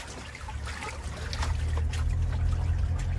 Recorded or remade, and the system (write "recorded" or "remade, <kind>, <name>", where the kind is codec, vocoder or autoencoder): recorded